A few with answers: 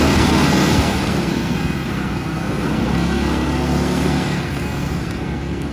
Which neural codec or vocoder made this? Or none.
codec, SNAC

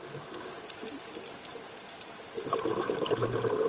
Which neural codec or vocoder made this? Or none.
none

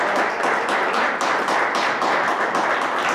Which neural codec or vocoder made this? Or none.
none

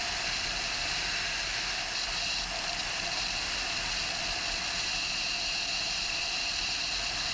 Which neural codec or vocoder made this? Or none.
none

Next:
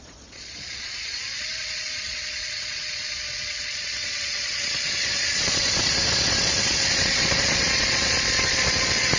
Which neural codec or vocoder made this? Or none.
vocoder, Vocos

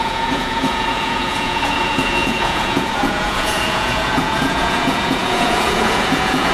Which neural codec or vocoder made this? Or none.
vocoder, Vocos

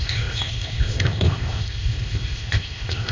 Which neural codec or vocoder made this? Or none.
codec, ZipCodec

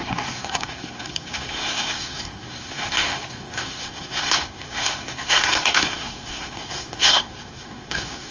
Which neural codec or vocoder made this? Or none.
codec, SNAC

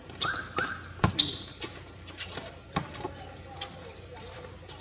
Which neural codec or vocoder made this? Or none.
none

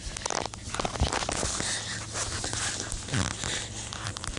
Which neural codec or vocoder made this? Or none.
none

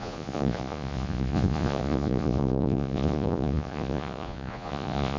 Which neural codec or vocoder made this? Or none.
vocoder, Vocos